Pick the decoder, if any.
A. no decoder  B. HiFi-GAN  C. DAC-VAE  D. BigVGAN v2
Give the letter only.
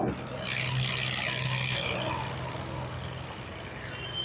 A